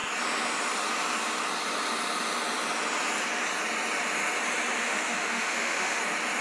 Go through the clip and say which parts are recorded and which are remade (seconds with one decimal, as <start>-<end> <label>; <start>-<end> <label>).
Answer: 0.0-4.8 recorded; 4.8-6.0 remade; 6.0-6.4 recorded